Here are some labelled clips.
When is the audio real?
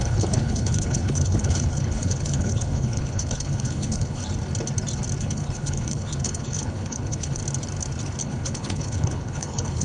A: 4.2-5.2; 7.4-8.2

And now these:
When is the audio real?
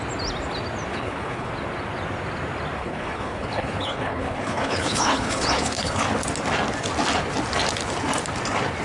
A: 0.0-0.9; 1.5-2.8; 6.1-8.8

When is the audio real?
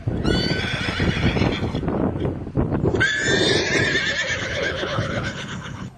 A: 0.0-4.4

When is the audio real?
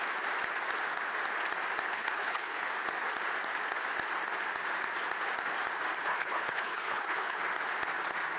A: 0.0-1.9; 2.7-6.0; 7.4-8.4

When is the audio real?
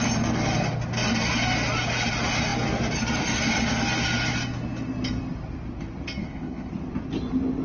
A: 0.0-6.2; 6.7-7.6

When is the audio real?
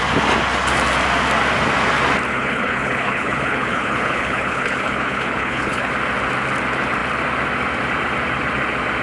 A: 0.0-2.3; 5.9-9.0